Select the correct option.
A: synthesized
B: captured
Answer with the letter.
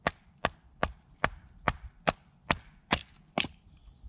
B